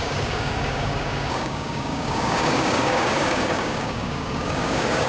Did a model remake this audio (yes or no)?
yes